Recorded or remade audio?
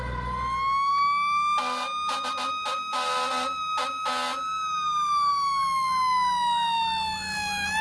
recorded